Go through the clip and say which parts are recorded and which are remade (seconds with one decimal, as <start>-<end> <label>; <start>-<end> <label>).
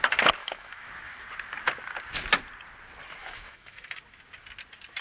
0.0-0.4 recorded; 0.4-0.9 remade; 0.9-3.2 recorded; 3.2-4.0 remade; 4.0-5.0 recorded